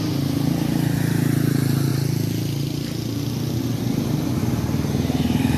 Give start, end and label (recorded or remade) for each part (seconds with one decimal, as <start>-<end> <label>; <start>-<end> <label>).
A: 0.0-5.6 recorded